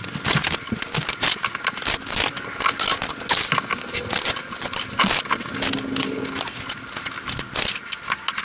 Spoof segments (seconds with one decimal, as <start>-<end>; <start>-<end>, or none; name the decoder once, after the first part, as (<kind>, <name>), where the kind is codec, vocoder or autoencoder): none